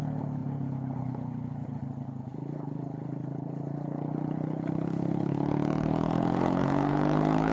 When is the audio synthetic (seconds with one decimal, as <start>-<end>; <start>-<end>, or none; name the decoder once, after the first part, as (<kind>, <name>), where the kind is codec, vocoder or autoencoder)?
0.0-7.5 (codec, HILCodec)